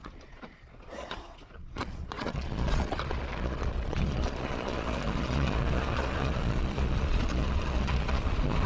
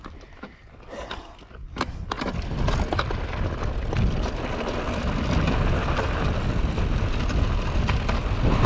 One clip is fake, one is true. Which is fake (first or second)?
first